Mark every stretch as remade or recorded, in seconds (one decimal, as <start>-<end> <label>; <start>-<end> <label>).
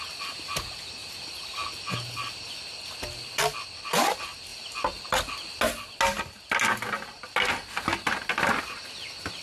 0.0-9.4 recorded